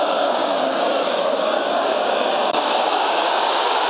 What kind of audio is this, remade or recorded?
remade